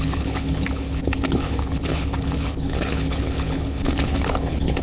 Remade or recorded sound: remade